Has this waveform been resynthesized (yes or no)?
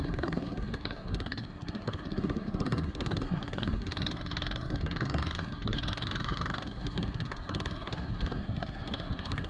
yes